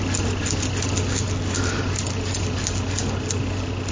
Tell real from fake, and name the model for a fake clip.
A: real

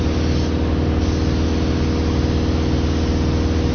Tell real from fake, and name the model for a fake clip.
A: real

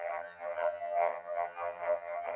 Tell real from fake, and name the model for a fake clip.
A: fake, vocoder, HiFi-GAN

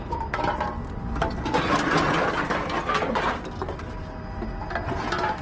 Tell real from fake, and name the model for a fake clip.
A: real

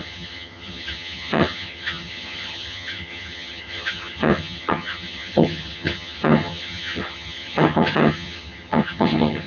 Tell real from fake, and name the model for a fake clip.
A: fake, vocoder, HiFi-GAN